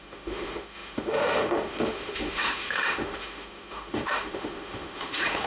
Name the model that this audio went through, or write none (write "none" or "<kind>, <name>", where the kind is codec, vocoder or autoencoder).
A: autoencoder, DAC-VAE